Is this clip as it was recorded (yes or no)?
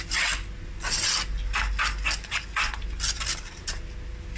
yes